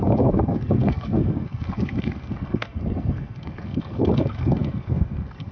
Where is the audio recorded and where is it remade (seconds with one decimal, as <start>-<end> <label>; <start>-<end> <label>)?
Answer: 0.0-5.5 remade